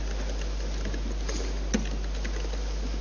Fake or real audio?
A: real